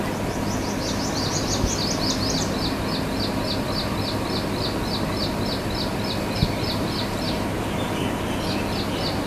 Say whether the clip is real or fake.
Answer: real